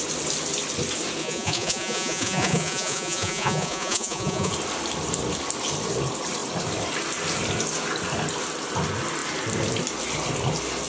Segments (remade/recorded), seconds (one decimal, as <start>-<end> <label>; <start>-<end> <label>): 0.0-1.2 recorded; 1.2-4.5 remade; 4.5-10.9 recorded